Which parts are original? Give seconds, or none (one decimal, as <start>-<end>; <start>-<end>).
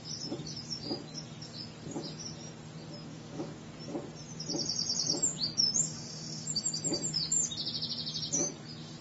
0.0-3.0; 3.7-9.0